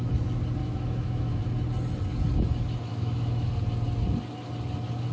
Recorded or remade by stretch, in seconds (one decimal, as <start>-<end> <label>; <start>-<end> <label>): 0.0-0.6 recorded; 0.6-1.4 remade; 1.4-2.9 recorded; 2.9-3.5 remade; 3.5-5.1 recorded